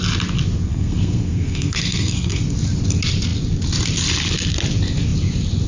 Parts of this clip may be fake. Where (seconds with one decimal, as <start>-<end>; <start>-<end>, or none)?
0.7-2.4